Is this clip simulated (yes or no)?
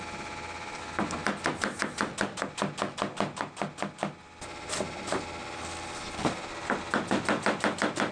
no